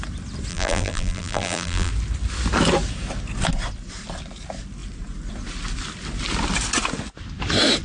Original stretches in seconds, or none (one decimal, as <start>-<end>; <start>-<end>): 0.0-0.5; 1.9-7.8